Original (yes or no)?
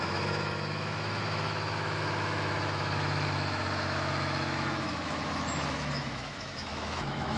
no